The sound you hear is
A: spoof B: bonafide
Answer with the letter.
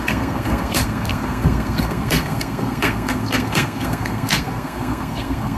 A